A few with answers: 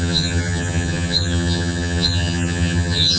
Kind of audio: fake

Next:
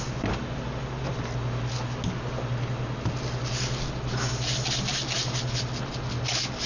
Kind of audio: real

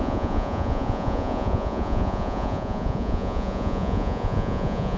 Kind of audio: fake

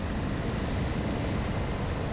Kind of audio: real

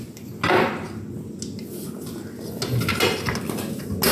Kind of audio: real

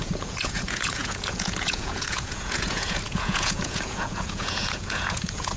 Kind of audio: fake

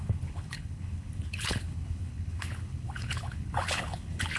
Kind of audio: fake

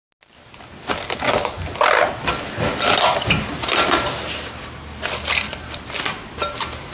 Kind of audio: real